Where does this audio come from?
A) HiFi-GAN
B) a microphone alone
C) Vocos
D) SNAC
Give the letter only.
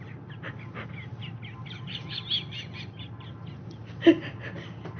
B